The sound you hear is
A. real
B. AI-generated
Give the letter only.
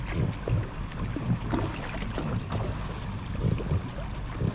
A